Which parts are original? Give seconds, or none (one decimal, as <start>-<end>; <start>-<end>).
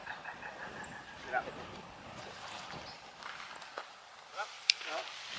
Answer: 3.2-3.7; 4.8-5.4